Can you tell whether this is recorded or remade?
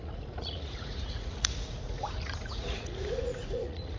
remade